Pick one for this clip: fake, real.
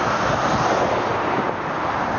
real